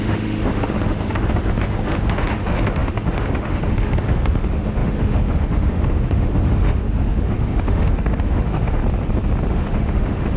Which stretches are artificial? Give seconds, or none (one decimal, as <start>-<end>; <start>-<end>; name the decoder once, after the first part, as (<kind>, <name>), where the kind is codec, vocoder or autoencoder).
0.0-8.8 (autoencoder, DAC-VAE); 9.5-10.4